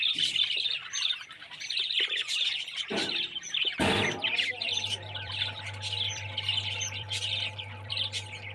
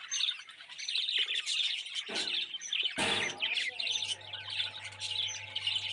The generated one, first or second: first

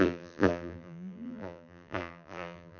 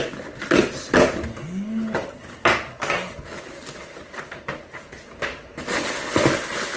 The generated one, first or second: first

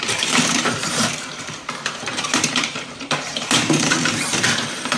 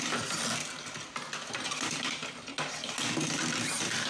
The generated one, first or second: first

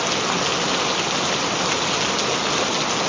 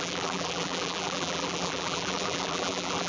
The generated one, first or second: second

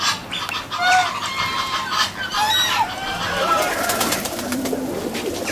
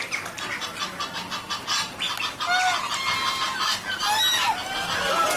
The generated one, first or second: first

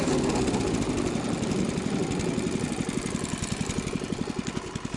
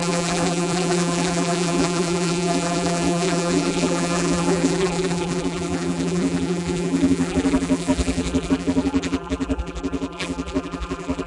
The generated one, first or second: second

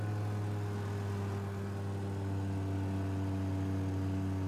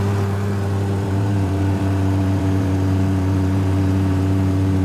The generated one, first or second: second